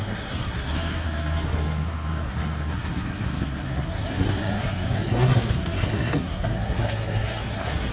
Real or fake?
fake